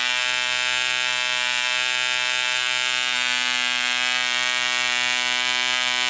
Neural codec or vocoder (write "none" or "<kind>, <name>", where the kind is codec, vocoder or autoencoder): none